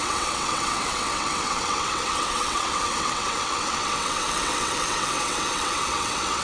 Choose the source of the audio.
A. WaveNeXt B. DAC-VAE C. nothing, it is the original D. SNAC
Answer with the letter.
A